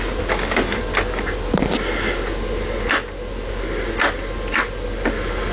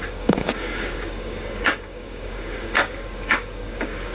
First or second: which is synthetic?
second